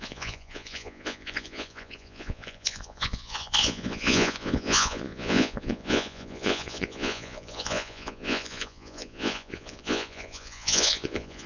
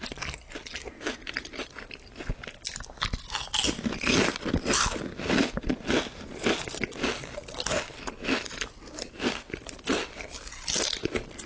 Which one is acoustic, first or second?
second